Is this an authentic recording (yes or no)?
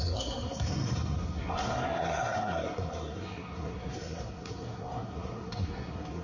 no